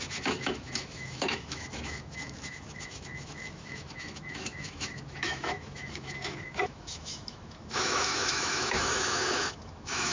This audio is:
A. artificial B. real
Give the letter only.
A